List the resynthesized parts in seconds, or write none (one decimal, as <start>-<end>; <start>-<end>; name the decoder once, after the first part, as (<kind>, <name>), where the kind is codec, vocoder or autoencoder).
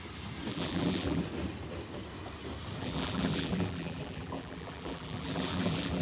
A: 0.5-1.2 (vocoder, BigVGAN v2); 2.8-6.0